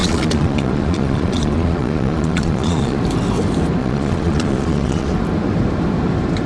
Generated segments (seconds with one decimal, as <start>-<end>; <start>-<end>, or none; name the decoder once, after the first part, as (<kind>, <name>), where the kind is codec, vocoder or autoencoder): 0.0-3.0 (vocoder, Vocos); 3.8-5.1